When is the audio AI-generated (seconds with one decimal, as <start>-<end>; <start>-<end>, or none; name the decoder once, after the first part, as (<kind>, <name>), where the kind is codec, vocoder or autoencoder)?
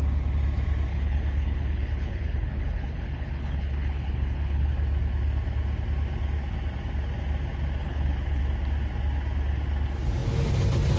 0.9-4.7 (codec, HILCodec); 7.8-8.4